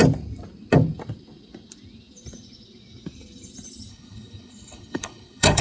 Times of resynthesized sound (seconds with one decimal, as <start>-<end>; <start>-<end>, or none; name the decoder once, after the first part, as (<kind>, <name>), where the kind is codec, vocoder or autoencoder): 3.9-5.6 (codec, HILCodec)

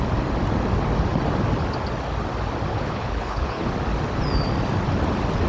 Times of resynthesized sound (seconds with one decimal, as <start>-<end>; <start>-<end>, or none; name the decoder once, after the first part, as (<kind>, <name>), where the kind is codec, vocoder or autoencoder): 2.7-3.7 (codec, HILCodec)

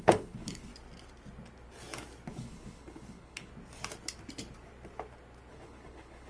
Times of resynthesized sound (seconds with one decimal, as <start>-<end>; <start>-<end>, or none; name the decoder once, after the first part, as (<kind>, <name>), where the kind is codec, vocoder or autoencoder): 0.0-0.7 (codec, HILCodec); 2.3-3.5; 5.5-6.3

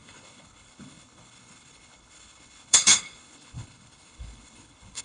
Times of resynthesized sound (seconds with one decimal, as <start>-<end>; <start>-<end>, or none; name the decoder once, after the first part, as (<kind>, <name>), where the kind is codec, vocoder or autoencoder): 0.0-5.0 (codec, HILCodec)